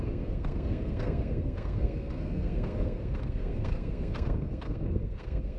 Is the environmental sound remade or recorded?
remade